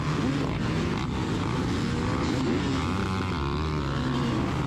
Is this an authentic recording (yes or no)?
yes